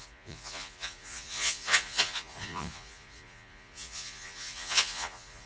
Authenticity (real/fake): fake